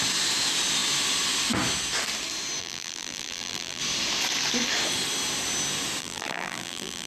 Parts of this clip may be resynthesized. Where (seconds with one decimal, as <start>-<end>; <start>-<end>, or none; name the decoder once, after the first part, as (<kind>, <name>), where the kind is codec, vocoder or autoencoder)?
2.6-3.8 (vocoder, BigVGAN v2); 6.0-7.1